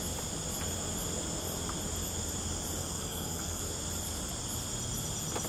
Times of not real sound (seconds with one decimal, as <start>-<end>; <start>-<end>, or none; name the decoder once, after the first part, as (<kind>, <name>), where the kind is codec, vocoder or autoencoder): 2.8-3.6 (codec, SNAC)